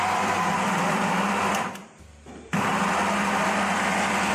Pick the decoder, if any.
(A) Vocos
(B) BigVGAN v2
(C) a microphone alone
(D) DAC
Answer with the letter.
B